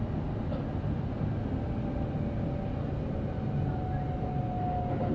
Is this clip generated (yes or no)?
no